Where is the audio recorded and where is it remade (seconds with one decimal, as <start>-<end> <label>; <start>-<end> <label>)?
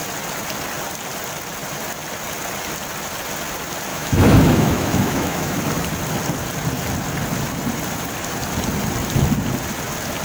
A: 0.0-3.9 recorded; 3.9-5.6 remade; 5.6-10.2 recorded